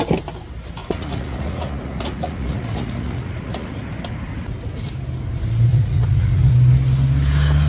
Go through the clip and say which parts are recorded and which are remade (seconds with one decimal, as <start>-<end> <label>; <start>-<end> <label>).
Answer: 0.0-0.8 recorded; 0.8-3.8 remade; 3.8-5.7 recorded; 5.7-6.5 remade; 6.5-7.7 recorded